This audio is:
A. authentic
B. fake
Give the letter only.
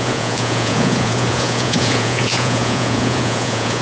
B